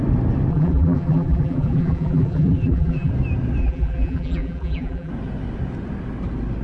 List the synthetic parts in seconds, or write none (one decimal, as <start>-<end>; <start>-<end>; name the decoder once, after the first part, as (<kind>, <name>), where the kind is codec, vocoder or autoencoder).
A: 0.5-3.1 (vocoder, BigVGAN v2); 3.6-5.1